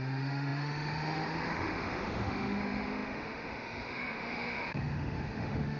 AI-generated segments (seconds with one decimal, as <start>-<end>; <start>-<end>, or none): 0.0-5.8